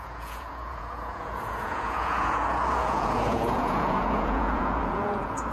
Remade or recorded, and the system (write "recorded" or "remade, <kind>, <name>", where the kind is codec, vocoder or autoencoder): remade, vocoder, Vocos